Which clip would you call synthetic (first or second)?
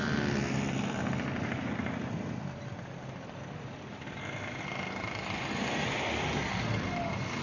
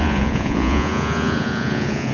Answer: second